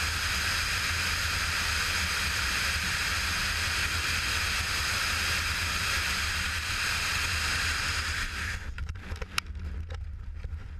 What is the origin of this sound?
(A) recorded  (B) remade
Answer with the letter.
A